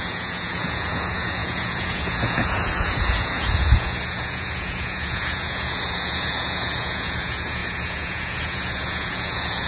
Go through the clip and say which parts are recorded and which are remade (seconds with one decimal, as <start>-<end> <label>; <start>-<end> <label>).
0.0-9.7 remade